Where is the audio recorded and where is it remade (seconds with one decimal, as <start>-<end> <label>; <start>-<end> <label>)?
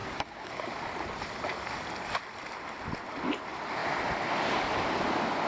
0.0-0.7 remade; 0.7-5.5 recorded